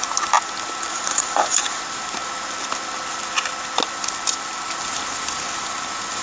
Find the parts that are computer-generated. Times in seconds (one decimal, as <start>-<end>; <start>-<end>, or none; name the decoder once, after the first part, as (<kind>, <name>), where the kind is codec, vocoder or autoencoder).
0.9-1.8 (vocoder, Vocos)